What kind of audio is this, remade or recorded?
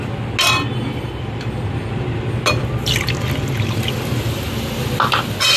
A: recorded